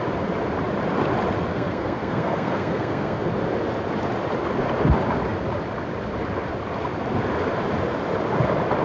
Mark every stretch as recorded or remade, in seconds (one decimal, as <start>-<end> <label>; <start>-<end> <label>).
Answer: 0.0-1.5 recorded; 1.5-3.3 remade; 3.3-8.8 recorded